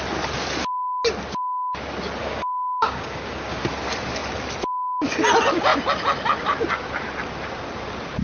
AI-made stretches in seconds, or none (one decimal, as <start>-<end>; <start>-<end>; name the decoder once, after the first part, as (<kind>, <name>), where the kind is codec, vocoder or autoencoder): 2.2-3.6 (codec, DAC)